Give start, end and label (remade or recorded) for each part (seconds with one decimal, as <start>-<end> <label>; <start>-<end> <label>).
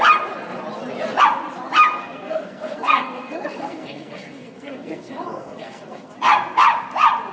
0.0-2.0 recorded; 2.0-6.1 remade; 6.1-7.3 recorded